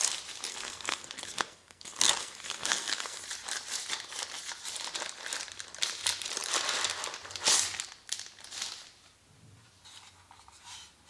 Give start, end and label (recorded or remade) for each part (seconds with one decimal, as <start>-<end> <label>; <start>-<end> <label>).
0.0-0.5 recorded; 0.5-3.2 remade; 3.2-11.1 recorded